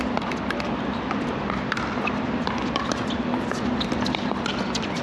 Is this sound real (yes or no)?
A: no